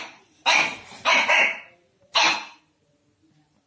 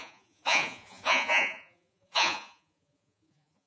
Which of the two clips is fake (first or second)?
second